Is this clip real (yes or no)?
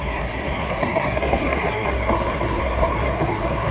no